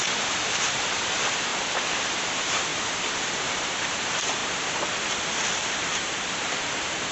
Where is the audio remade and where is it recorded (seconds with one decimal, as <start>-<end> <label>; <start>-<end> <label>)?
0.0-1.5 remade; 1.5-2.0 recorded; 2.0-4.4 remade; 4.4-5.7 recorded; 5.7-7.1 remade